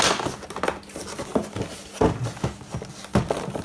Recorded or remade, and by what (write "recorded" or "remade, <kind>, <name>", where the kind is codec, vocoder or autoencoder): recorded